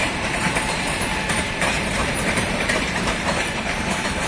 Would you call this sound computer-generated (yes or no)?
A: yes